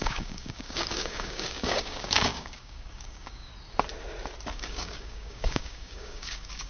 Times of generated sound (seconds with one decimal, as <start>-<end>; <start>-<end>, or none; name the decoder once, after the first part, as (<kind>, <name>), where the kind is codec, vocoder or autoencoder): 0.0-3.5 (codec, DAC); 4.5-6.7